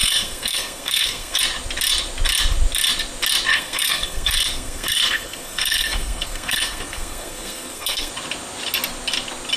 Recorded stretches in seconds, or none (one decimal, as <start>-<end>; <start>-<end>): 1.4-3.5; 8.1-9.6